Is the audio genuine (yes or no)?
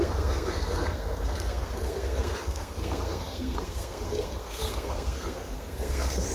no